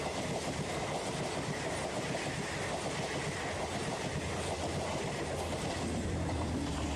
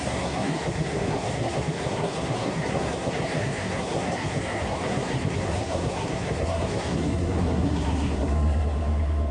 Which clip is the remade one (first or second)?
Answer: second